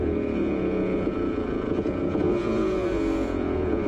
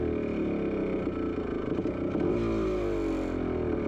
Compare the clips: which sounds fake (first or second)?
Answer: first